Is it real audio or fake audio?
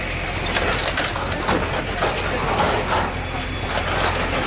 real